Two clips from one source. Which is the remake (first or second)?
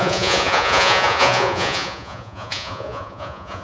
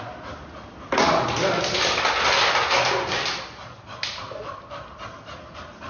first